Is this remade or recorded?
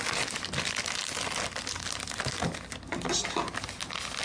recorded